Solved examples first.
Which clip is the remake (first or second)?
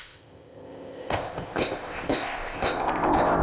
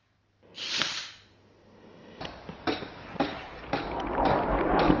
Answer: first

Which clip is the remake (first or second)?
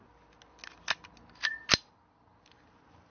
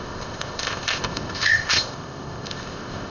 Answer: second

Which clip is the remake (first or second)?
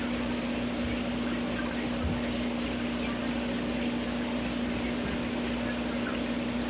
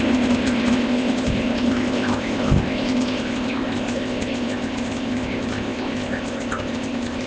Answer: second